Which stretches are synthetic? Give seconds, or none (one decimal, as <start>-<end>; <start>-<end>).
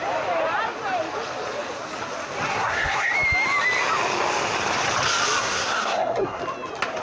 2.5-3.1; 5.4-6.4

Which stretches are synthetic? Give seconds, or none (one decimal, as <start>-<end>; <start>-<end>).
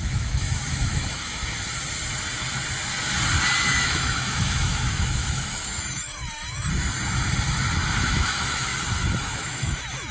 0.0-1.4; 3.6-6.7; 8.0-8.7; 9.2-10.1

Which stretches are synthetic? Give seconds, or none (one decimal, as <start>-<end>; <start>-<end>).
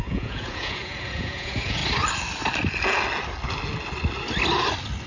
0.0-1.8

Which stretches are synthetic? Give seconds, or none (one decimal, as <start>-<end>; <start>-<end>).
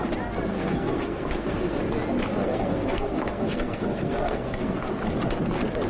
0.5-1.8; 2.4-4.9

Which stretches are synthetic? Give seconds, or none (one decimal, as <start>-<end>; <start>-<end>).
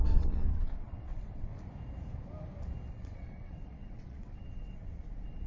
0.0-1.5; 2.9-5.5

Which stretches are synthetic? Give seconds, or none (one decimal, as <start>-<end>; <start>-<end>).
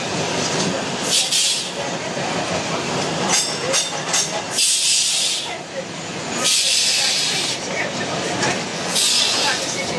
6.1-6.8; 8.7-9.6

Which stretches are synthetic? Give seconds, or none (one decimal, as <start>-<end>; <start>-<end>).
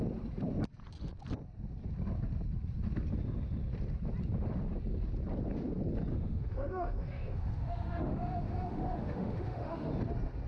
6.1-9.9